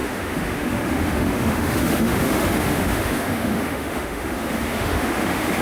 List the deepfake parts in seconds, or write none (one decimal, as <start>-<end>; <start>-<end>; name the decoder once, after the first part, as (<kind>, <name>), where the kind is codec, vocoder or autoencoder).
0.0-5.6 (autoencoder, DAC-VAE)